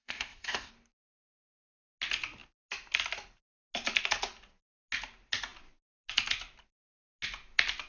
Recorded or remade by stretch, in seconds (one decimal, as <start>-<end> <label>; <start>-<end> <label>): 0.0-0.7 remade; 0.7-7.9 recorded